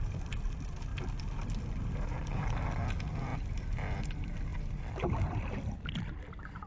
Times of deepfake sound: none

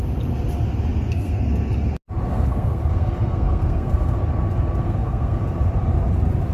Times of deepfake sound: 0.9-1.7 (codec, SNAC); 2.3-4.2; 4.8-5.4

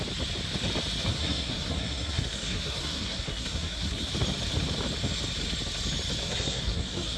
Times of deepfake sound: 1.1-4.1 (codec, SNAC); 6.2-7.2

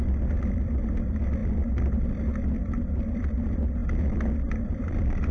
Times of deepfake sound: 0.0-3.8 (vocoder, BigVGAN v2); 4.6-5.3

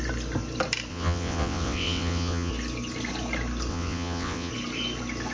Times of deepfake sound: 0.9-2.5 (vocoder, WaveNeXt); 3.7-4.5